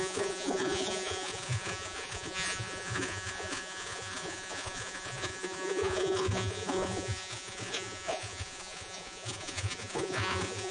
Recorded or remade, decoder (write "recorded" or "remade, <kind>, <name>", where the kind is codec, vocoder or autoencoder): remade, vocoder, Vocos